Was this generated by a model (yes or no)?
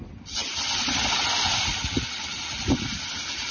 no